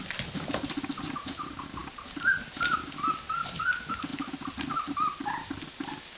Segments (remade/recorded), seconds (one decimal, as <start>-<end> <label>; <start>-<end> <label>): 0.0-6.2 recorded